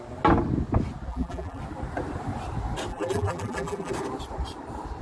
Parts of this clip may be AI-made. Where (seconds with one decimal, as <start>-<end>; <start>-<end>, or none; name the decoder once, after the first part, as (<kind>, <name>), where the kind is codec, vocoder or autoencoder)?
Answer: 1.1-1.6 (vocoder, BigVGAN v2); 2.9-3.9

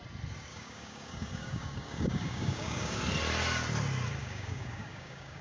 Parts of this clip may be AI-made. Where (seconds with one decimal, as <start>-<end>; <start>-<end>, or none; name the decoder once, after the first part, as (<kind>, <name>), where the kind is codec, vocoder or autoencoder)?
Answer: 0.5-3.0 (codec, DAC); 4.2-5.4

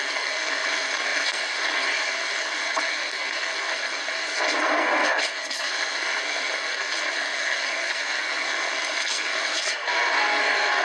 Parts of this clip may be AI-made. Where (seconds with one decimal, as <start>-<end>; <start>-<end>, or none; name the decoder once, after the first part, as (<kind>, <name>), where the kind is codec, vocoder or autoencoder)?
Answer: 0.0-10.8 (codec, SNAC)